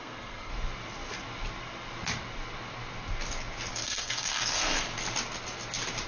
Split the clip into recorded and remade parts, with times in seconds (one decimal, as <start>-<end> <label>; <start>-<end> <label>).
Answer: 0.0-0.5 remade; 0.5-3.7 recorded; 3.7-4.9 remade; 4.9-6.1 recorded